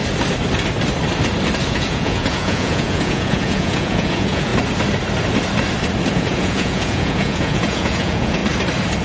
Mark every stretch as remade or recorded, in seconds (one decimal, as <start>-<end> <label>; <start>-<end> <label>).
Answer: 0.0-1.7 recorded; 1.7-4.5 remade; 4.5-6.1 recorded; 6.1-8.4 remade; 8.4-9.0 recorded